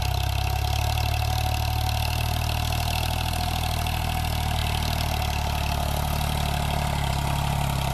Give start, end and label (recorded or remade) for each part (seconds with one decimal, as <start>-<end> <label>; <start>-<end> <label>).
0.0-7.9 recorded